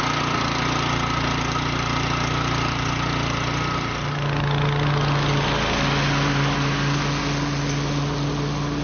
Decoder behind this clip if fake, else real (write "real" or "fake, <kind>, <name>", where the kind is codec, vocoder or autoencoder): real